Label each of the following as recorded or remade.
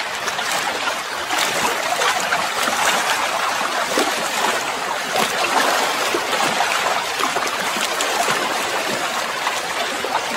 remade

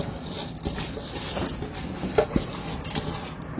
recorded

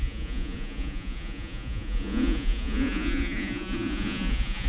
remade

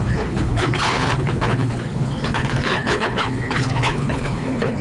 remade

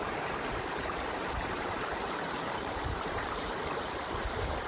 remade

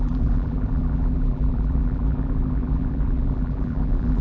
remade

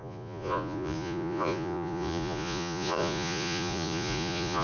remade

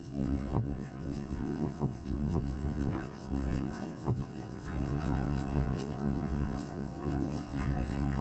remade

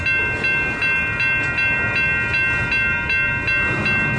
recorded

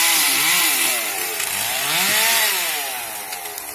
recorded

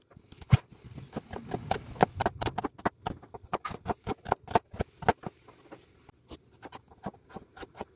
recorded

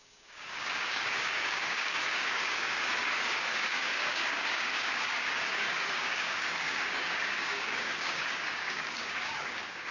remade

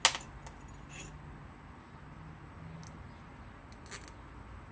recorded